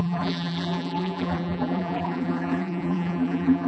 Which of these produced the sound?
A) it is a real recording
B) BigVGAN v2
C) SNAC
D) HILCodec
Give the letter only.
B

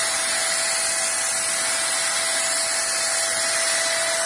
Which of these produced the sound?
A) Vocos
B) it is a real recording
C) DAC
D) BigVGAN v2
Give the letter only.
B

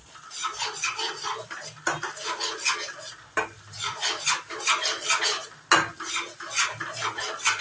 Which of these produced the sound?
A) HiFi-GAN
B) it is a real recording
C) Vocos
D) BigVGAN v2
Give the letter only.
B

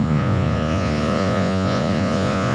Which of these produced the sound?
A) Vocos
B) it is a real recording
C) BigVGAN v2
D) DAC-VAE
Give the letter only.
A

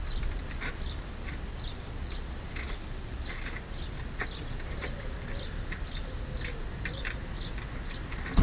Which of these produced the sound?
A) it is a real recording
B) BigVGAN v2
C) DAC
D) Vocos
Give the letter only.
A